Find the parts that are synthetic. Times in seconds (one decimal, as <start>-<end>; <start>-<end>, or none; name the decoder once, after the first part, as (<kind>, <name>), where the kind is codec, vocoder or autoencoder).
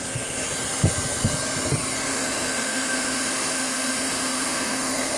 2.1-5.2 (autoencoder, DAC-VAE)